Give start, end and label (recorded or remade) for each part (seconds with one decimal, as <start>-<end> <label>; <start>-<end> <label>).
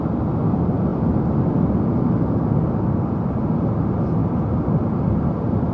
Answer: 0.0-5.7 recorded